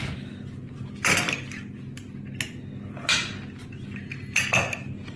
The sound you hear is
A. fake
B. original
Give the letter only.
B